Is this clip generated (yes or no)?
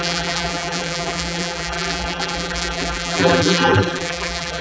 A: yes